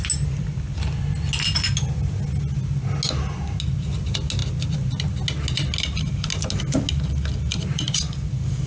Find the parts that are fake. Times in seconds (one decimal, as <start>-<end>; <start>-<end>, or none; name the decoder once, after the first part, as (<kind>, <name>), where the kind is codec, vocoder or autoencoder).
7.5-8.1 (vocoder, BigVGAN v2)